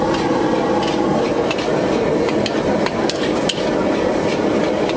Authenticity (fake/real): real